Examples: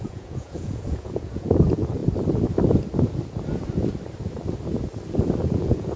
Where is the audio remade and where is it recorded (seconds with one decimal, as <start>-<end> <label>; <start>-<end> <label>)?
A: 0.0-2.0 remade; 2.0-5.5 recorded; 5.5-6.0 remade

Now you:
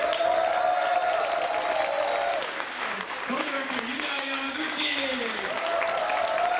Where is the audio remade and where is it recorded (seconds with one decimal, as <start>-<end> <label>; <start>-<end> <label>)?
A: 0.0-2.3 recorded; 2.3-5.5 remade; 5.5-6.6 recorded

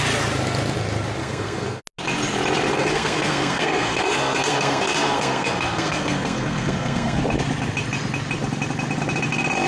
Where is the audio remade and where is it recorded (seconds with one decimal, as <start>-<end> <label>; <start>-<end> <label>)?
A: 0.0-1.2 recorded; 1.2-1.8 remade; 1.8-2.7 recorded; 2.7-7.2 remade; 7.2-9.7 recorded